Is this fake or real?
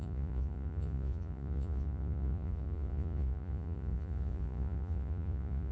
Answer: fake